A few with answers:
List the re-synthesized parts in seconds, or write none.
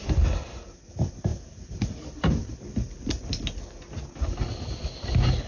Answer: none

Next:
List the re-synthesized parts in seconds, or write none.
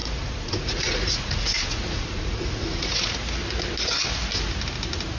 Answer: 0.0-3.1 (vocoder, Vocos)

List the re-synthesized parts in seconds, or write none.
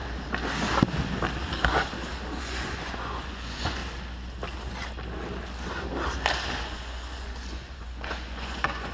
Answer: 2.4-3.8 (vocoder, Vocos); 6.6-8.9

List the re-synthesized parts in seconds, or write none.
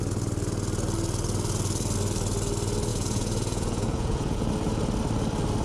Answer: 2.9-4.5 (vocoder, Vocos)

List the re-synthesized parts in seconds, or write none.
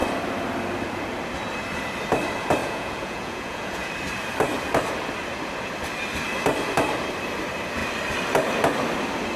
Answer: 2.6-3.9 (vocoder, Vocos)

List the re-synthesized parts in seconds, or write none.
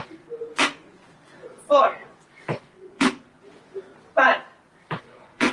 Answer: 0.0-3.9 (vocoder, Vocos); 5.0-5.5